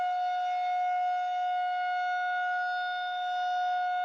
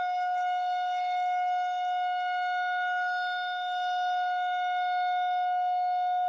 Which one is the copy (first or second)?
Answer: second